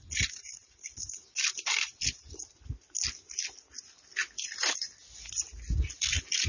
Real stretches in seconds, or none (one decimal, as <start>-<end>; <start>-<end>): 0.0-6.5